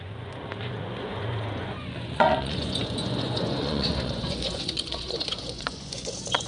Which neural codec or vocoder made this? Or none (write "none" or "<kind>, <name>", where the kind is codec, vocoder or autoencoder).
vocoder, Vocos